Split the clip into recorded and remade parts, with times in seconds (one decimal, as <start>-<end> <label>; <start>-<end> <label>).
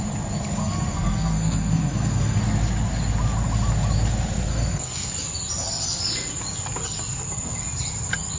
0.0-0.6 recorded; 0.6-2.4 remade; 2.4-4.5 recorded; 4.5-5.1 remade; 5.1-8.4 recorded